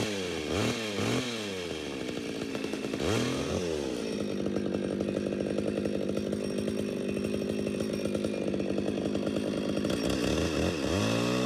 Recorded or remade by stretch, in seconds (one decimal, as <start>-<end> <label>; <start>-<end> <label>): 0.0-2.5 recorded; 2.5-3.0 remade; 3.0-11.5 recorded